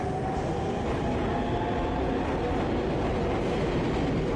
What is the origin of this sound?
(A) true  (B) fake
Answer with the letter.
A